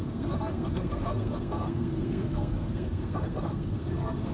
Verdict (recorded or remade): remade